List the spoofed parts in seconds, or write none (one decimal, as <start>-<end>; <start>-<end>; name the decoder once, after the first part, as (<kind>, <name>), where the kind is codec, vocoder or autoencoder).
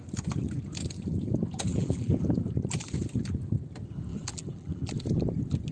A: 1.7-2.2 (vocoder, BigVGAN v2); 4.1-4.9